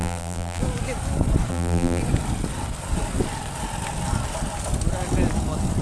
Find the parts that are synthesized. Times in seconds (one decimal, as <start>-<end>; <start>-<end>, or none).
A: 0.0-0.6; 1.5-2.0